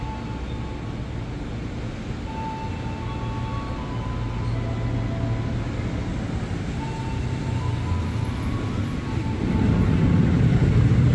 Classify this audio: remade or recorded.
recorded